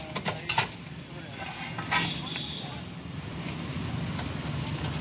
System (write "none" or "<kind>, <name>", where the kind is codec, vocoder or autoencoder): none